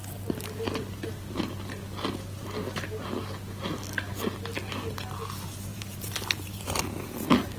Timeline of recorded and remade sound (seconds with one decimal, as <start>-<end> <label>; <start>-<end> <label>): 0.0-0.6 remade; 0.6-5.7 recorded; 5.7-6.8 remade; 6.8-7.6 recorded